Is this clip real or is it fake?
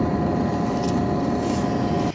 real